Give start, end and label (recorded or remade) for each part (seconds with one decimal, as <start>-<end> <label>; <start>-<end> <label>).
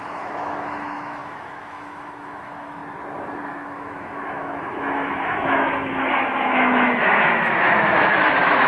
0.0-2.8 remade; 2.8-3.5 recorded; 3.5-8.7 remade